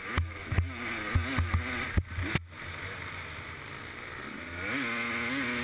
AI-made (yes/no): no